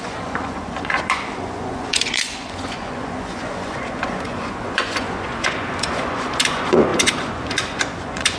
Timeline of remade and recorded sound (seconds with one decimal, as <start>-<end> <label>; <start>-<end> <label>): 0.0-8.4 remade